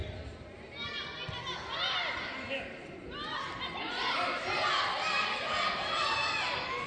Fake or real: real